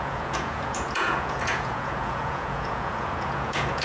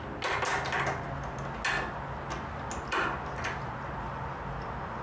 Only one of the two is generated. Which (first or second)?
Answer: first